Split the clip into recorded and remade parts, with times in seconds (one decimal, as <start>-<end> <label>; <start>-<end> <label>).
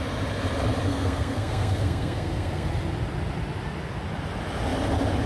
0.0-0.9 recorded; 0.9-2.7 remade; 2.7-5.3 recorded